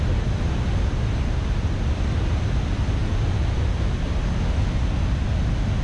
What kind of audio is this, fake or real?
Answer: real